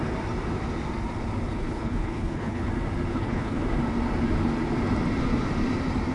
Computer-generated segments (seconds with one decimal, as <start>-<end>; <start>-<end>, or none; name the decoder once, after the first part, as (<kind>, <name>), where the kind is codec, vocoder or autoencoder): 1.5-2.7 (codec, HILCodec); 3.1-3.6